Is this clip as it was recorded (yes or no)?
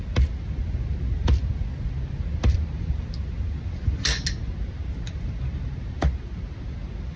yes